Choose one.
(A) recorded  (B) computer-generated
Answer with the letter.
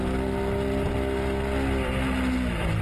A